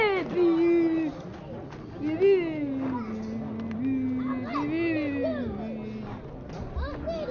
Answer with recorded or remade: recorded